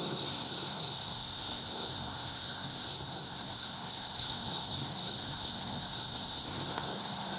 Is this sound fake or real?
fake